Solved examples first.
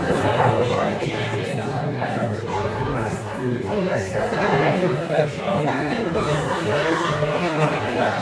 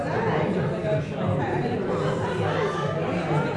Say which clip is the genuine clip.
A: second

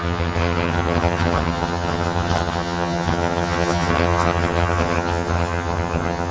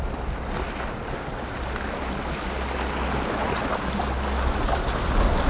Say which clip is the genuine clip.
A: second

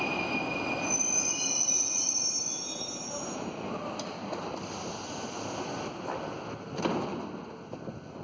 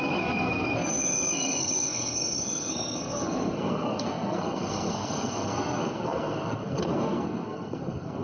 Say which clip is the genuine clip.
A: first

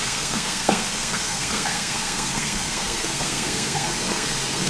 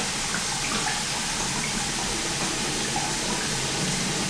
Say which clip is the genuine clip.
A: second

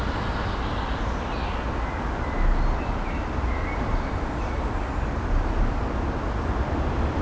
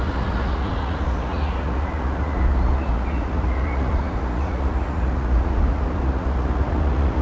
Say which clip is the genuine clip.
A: first